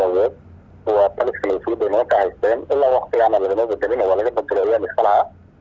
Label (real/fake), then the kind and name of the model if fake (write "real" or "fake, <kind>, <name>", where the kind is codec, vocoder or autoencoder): real